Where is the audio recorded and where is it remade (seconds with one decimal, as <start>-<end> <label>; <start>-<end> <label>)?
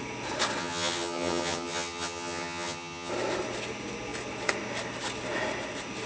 0.0-0.6 recorded; 0.6-3.1 remade; 3.1-6.1 recorded